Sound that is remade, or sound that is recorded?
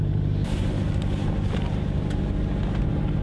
recorded